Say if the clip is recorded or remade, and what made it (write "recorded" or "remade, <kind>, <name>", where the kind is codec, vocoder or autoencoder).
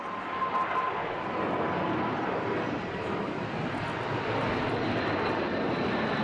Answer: recorded